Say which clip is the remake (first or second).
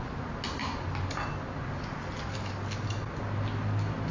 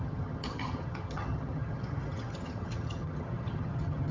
second